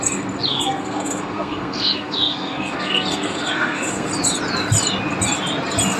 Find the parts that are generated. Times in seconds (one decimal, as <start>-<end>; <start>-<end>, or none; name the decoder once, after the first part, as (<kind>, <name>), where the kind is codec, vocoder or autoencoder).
0.5-4.1 (codec, SNAC)